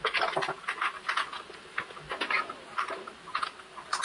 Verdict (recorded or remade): recorded